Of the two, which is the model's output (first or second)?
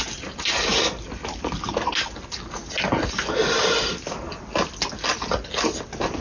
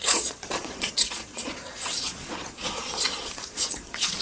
second